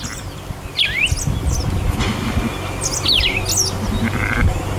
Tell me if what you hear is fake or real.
real